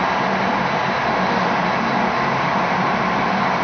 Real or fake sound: real